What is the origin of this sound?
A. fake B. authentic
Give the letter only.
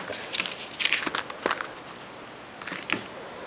B